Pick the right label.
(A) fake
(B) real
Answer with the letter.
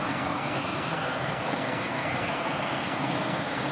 A